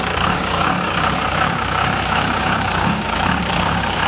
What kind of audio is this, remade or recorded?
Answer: remade